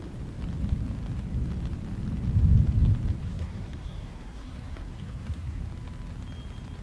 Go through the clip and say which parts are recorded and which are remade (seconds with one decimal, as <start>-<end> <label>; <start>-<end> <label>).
0.0-3.2 recorded; 3.2-5.6 remade; 5.6-6.8 recorded